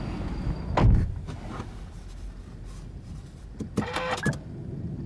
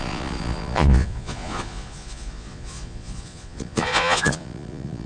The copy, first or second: second